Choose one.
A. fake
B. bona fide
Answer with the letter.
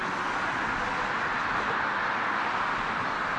B